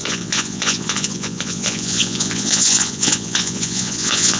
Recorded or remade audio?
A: remade